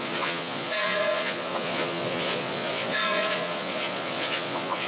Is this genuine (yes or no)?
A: no